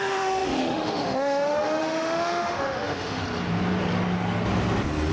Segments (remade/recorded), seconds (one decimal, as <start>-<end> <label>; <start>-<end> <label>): 0.0-3.2 remade; 3.2-5.1 recorded